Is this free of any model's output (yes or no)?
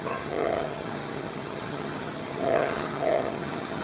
no